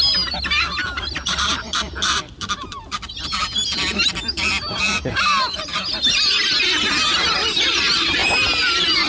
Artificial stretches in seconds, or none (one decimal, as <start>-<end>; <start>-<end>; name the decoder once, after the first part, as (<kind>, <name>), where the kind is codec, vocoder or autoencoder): 0.8-5.8 (vocoder, BigVGAN v2)

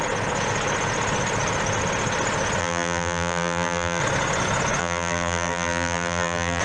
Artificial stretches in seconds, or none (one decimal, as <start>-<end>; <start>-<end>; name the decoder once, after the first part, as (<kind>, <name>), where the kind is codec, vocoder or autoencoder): 2.6-4.0 (vocoder, BigVGAN v2); 4.8-6.6

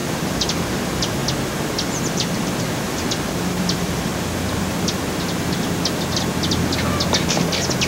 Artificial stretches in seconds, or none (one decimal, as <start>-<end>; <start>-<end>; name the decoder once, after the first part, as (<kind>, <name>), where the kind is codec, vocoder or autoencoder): 0.0-1.2 (vocoder, BigVGAN v2); 1.8-4.1; 7.3-7.9

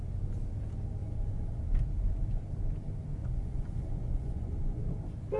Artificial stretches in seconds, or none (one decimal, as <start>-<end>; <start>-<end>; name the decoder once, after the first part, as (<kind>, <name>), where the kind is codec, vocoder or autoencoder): 1.0-1.6 (vocoder, Vocos); 3.2-4.8

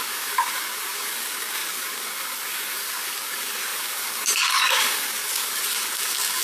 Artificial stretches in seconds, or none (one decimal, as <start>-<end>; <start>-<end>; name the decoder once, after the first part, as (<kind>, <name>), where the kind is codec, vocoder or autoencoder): 0.0-6.4 (codec, DAC)

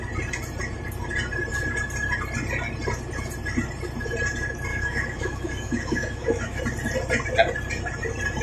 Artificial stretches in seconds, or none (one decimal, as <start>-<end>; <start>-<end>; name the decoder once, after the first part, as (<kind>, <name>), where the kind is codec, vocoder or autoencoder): 4.7-6.6 (autoencoder, DAC-VAE)

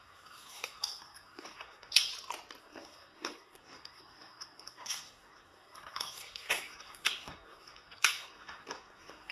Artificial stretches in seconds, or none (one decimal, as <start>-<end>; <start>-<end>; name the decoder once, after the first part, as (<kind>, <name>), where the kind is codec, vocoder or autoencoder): 0.0-2.1 (codec, SNAC); 2.6-9.3